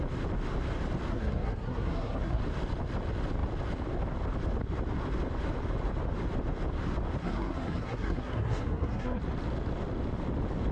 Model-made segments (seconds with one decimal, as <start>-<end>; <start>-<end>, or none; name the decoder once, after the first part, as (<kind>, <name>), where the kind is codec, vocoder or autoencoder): 1.1-2.4 (codec, SNAC); 7.2-9.2